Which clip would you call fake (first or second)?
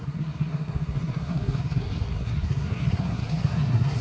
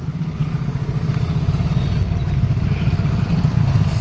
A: first